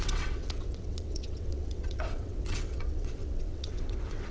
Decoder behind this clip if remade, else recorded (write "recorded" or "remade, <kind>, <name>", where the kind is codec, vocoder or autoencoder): remade, vocoder, WaveNeXt